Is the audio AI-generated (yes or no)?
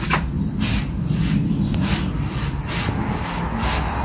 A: no